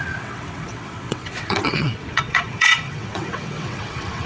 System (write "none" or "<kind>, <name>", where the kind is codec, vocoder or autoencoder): vocoder, WaveNeXt